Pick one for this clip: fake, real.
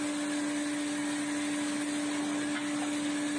real